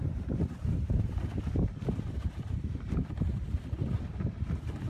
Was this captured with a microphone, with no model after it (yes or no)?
no